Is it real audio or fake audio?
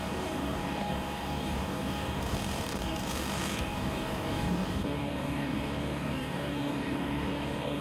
fake